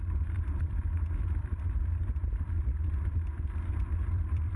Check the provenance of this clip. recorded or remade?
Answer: remade